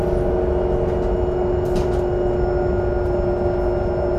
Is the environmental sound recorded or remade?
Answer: recorded